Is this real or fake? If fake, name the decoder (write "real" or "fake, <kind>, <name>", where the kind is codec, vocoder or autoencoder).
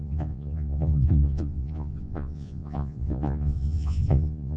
fake, vocoder, Vocos